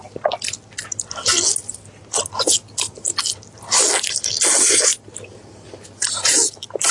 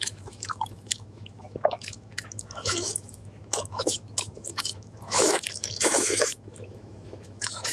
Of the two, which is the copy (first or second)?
second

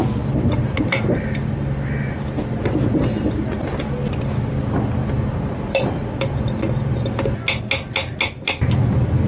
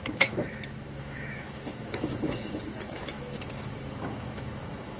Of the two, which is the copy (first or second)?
second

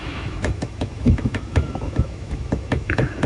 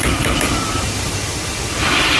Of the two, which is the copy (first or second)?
first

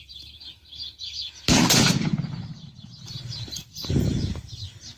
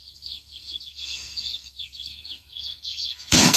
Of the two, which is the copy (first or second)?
second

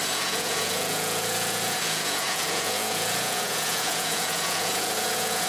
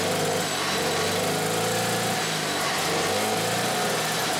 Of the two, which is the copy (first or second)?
first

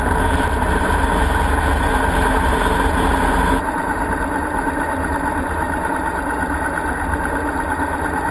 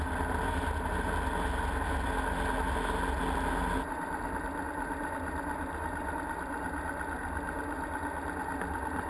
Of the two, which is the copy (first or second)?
first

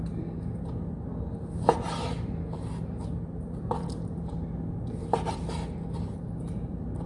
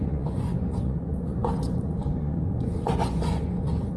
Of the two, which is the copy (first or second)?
second